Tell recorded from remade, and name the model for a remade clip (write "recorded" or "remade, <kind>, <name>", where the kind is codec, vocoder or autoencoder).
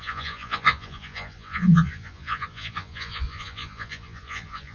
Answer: remade, vocoder, Vocos